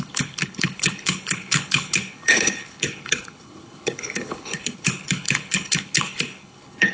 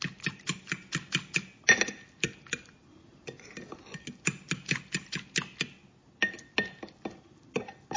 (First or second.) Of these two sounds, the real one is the second